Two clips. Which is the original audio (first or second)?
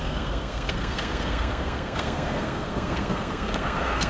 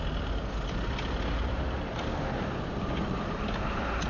second